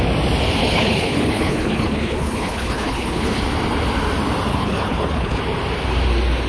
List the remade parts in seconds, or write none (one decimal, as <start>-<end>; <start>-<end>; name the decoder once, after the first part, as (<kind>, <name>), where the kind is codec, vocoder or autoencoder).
0.6-3.4 (codec, HILCodec); 4.5-5.4